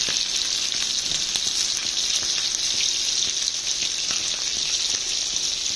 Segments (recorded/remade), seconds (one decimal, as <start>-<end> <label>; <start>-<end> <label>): 0.0-5.8 recorded